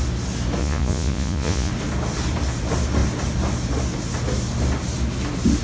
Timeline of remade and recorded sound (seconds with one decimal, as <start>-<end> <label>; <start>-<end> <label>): 0.0-0.6 recorded; 0.6-1.7 remade; 1.7-5.6 recorded